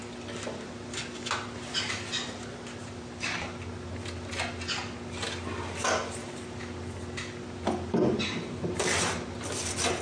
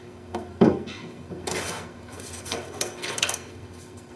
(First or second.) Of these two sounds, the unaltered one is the first